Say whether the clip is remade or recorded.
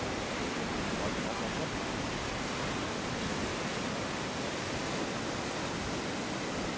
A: recorded